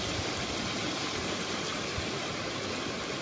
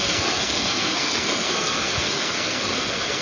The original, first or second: first